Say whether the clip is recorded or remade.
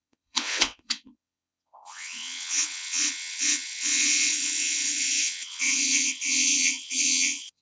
remade